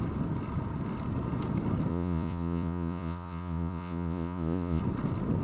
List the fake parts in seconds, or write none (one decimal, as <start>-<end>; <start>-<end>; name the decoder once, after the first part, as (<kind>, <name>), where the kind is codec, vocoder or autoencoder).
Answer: 1.9-4.8 (vocoder, Vocos)